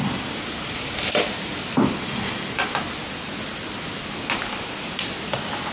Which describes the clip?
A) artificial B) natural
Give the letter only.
B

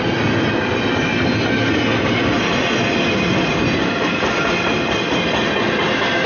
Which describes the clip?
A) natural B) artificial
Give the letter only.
A